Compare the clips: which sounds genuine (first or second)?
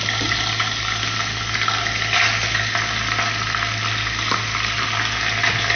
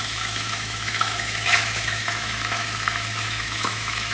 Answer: first